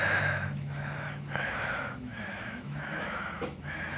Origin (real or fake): fake